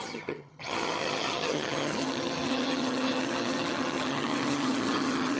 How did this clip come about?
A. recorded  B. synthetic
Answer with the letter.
B